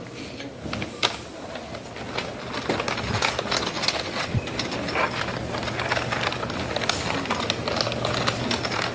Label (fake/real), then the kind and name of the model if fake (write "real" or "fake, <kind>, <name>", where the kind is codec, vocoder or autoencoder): real